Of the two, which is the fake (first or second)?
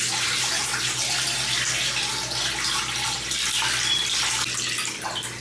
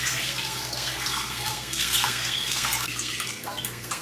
second